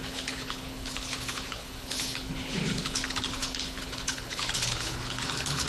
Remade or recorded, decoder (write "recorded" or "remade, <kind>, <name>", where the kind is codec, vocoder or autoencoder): remade, codec, HILCodec